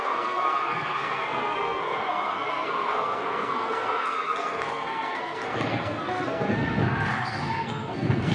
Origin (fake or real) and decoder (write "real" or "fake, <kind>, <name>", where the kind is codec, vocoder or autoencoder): fake, codec, SNAC